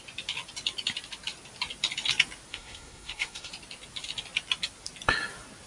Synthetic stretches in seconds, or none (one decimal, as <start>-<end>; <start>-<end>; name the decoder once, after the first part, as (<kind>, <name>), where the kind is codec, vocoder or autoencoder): 2.5-3.5 (codec, SNAC)